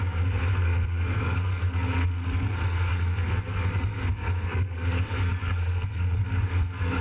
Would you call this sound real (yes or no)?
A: no